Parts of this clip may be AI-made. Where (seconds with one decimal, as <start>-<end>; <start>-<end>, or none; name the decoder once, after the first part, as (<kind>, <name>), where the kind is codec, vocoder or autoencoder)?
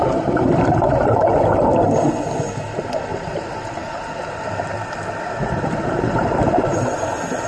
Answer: 3.1-4.9 (vocoder, BigVGAN v2)